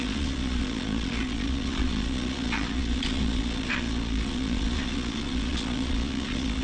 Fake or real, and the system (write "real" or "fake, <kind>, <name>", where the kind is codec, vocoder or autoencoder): fake, vocoder, Vocos